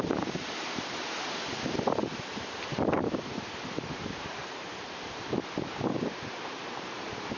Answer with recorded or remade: remade